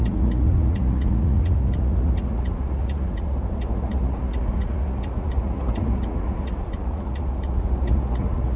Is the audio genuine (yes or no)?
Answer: no